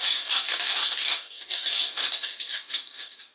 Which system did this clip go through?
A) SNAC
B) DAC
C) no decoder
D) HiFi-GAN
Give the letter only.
B